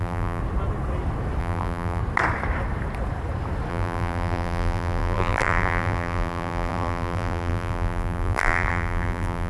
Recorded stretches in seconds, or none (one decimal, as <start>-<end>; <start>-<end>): 0.4-1.4; 2.0-3.7